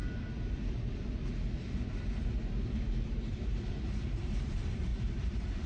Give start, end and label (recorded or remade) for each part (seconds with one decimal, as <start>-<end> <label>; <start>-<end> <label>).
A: 0.0-3.0 recorded; 3.0-5.7 remade